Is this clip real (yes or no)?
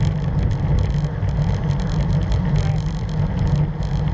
yes